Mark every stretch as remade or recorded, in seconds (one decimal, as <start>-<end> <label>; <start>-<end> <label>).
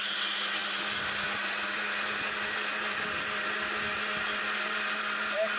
0.0-5.6 recorded